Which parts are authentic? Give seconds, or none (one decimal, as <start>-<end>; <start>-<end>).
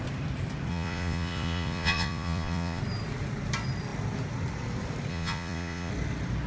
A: 0.0-0.7; 2.8-5.1; 5.9-6.5